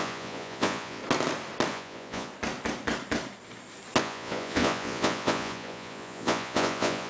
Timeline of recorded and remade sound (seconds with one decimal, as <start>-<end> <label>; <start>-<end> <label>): 0.0-1.0 remade; 1.0-1.7 recorded; 1.7-2.3 remade; 2.3-4.0 recorded; 4.0-7.1 remade